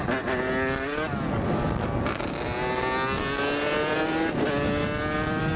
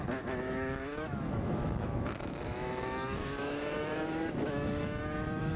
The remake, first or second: second